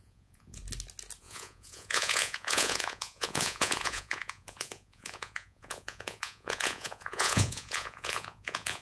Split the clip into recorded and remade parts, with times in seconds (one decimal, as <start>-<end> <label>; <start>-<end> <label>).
0.0-0.6 remade; 0.6-1.2 recorded; 1.2-8.8 remade